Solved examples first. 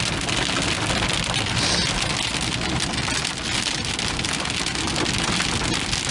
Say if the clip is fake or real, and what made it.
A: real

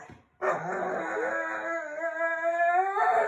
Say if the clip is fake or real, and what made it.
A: real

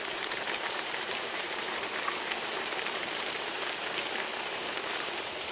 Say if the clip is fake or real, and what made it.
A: fake, vocoder, BigVGAN v2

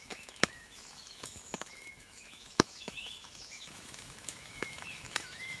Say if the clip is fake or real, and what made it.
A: fake, autoencoder, DAC-VAE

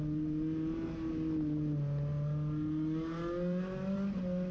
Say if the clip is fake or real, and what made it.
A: real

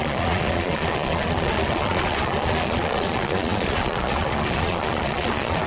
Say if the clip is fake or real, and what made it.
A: fake, vocoder, Vocos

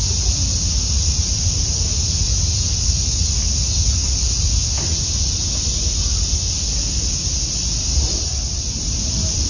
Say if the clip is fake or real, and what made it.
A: real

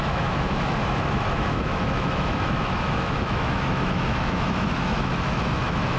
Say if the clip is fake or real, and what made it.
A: fake, autoencoder, DAC-VAE